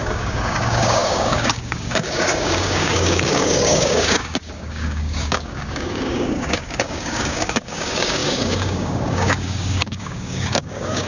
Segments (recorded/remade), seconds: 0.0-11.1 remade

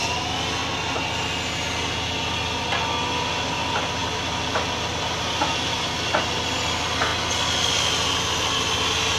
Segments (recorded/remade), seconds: 0.0-9.2 recorded

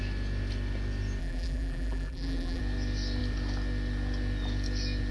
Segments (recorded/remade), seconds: 0.0-1.2 recorded; 1.2-2.6 remade; 2.6-5.1 recorded

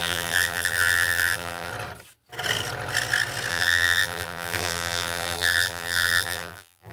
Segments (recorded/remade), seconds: 0.0-1.7 remade; 1.7-3.5 recorded; 3.5-6.9 remade

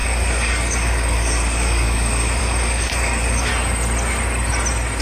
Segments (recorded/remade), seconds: 0.0-3.5 remade; 3.5-5.0 recorded